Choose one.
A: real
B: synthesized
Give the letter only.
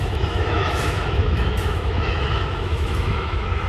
B